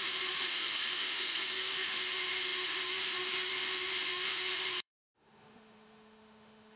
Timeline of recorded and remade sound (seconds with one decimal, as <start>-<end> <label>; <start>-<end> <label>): 0.0-6.8 remade